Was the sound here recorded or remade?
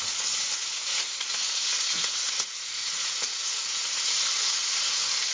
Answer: remade